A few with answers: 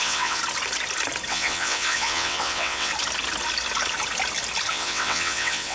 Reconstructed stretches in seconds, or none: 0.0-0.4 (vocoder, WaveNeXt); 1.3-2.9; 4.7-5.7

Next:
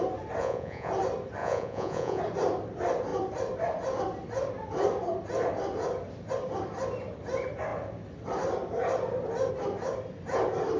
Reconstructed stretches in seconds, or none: 0.4-0.9 (vocoder, Vocos); 1.4-2.2

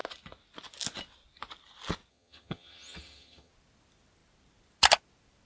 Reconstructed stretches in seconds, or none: 2.1-3.5 (vocoder, HiFi-GAN)